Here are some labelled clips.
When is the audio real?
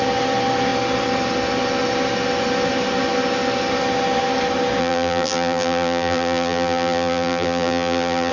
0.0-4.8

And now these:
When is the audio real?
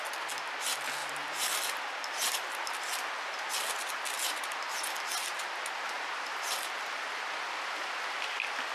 0.0-1.0; 3.5-8.7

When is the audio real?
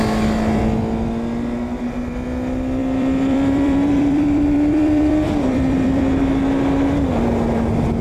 0.0-2.8; 6.2-8.0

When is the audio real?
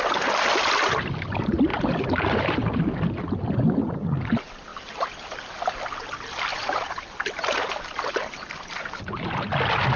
0.0-1.7; 3.1-4.7; 5.5-6.5; 9.0-10.0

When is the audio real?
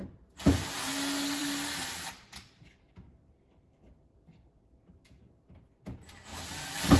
0.0-1.4; 5.2-6.3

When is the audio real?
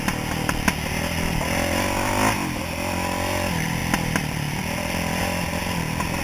0.0-3.8; 5.2-6.2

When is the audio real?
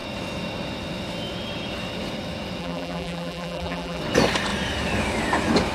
0.0-2.6; 4.0-5.7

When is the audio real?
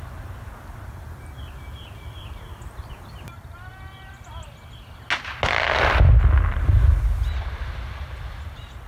3.7-8.0